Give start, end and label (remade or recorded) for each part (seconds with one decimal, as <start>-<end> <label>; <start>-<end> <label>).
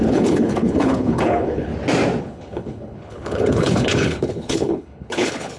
0.0-1.7 remade; 1.7-2.2 recorded; 2.2-5.6 remade